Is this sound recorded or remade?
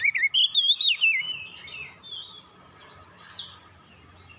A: recorded